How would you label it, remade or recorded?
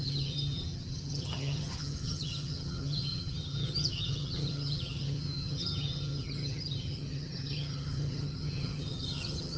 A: remade